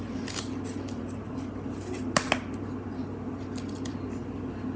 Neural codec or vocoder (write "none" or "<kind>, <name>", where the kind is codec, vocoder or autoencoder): none